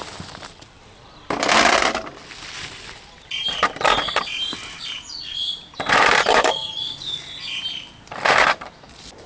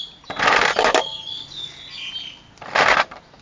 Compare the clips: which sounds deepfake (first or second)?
first